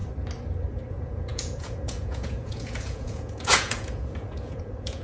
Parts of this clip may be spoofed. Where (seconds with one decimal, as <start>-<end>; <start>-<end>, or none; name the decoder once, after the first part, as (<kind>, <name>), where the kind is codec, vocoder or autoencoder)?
0.9-5.0 (vocoder, Vocos)